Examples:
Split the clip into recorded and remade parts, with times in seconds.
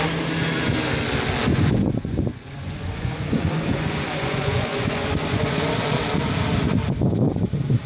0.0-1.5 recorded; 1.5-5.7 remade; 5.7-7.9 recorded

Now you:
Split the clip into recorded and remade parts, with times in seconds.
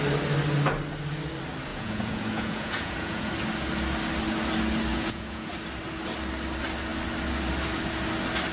0.0-1.7 recorded; 1.7-3.3 remade; 3.3-4.9 recorded; 4.9-5.5 remade; 5.5-8.5 recorded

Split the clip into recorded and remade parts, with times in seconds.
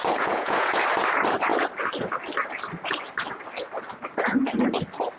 0.0-0.8 remade; 0.8-5.2 recorded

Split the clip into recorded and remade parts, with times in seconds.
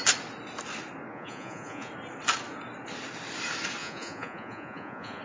0.0-1.1 recorded; 1.1-1.9 remade; 1.9-3.8 recorded; 3.8-5.2 remade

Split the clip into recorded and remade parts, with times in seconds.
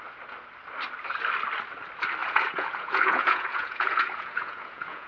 0.0-2.2 recorded; 2.2-5.1 remade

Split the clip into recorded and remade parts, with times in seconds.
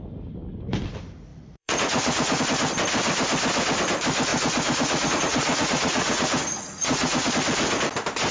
0.0-1.3 recorded; 1.3-2.4 remade; 2.4-4.3 recorded; 4.3-7.3 remade; 7.3-8.3 recorded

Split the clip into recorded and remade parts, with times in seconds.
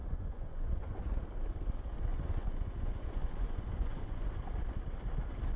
0.0-1.0 remade; 1.0-2.1 recorded; 2.1-4.4 remade; 4.4-5.6 recorded